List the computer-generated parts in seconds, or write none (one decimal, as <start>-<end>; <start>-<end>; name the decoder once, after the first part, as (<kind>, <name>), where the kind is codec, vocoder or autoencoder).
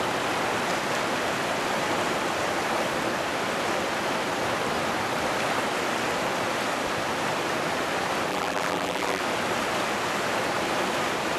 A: 8.3-9.2 (vocoder, BigVGAN v2)